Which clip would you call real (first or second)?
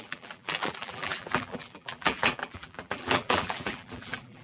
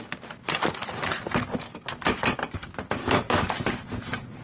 second